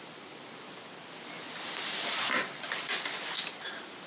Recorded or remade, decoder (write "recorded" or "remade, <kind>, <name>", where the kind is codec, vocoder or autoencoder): recorded